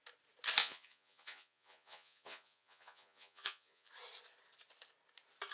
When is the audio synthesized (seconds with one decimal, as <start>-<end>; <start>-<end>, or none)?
0.6-3.9